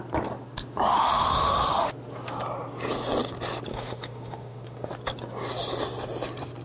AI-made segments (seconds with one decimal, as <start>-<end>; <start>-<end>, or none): 0.9-1.9; 3.7-4.9